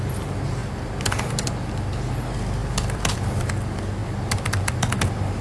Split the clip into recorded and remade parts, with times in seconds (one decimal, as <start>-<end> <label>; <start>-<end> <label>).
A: 0.0-0.6 recorded; 0.6-2.1 remade; 2.1-2.6 recorded; 2.6-3.5 remade; 3.5-4.0 recorded; 4.0-4.7 remade; 4.7-5.4 recorded